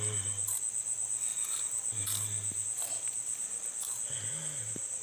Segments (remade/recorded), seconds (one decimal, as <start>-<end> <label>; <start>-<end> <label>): 0.0-5.0 recorded